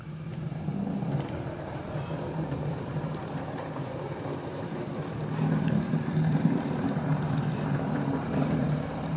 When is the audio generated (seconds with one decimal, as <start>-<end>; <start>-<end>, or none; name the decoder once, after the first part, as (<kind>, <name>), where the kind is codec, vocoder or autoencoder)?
0.0-0.7 (vocoder, BigVGAN v2); 1.5-9.2